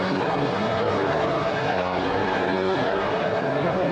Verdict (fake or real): fake